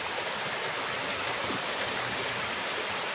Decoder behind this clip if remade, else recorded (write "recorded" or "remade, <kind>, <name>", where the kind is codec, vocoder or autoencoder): recorded